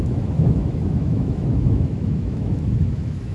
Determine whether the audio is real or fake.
fake